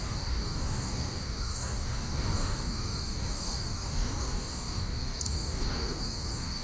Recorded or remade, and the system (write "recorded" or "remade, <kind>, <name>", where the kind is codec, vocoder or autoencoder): remade, codec, DAC